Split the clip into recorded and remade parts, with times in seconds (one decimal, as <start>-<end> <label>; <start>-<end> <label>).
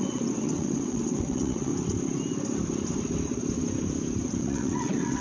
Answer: 0.0-1.7 remade; 1.7-4.4 recorded; 4.4-5.2 remade